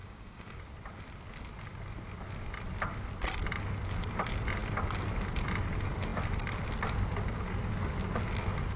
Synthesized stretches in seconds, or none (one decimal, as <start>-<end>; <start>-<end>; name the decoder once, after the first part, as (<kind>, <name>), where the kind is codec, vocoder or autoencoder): 0.0-0.6 (codec, DAC)